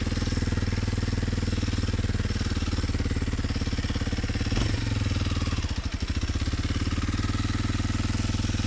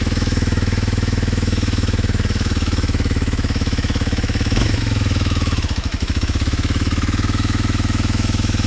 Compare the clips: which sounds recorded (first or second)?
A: first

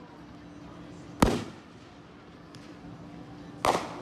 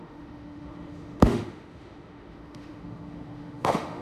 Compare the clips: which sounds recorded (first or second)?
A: first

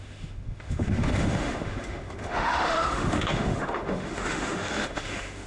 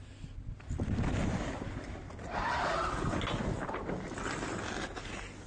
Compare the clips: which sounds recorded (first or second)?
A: second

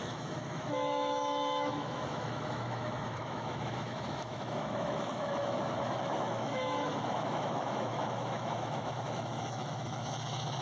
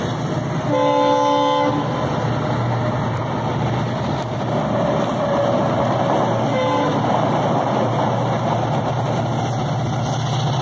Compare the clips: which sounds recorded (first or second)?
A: second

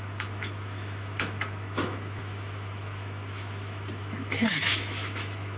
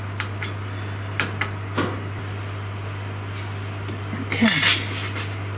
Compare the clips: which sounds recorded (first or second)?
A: second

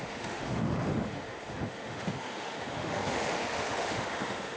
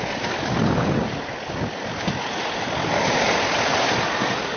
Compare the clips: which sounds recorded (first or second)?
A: second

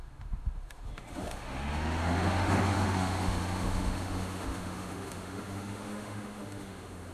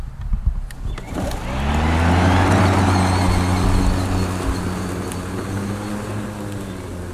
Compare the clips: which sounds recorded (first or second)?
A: second